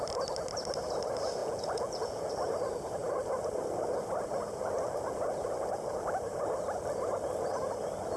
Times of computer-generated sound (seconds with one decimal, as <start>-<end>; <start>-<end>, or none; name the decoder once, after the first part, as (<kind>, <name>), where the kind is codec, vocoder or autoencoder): 1.4-2.3 (vocoder, Vocos)